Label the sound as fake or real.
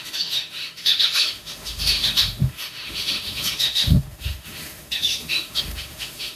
fake